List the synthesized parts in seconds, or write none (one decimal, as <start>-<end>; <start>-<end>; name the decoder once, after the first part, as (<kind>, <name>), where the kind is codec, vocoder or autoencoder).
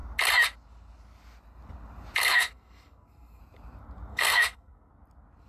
2.2-3.4 (codec, SNAC); 4.1-4.9